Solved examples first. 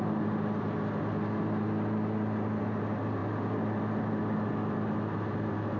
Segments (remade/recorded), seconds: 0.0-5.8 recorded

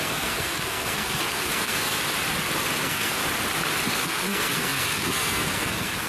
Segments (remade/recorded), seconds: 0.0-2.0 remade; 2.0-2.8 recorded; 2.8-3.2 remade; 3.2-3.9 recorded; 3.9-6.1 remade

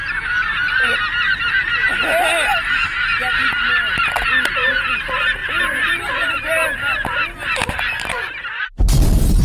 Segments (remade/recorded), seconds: 0.0-9.4 recorded

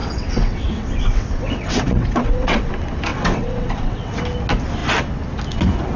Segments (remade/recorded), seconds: 0.0-2.7 remade; 2.7-3.1 recorded; 3.1-4.2 remade; 4.2-6.0 recorded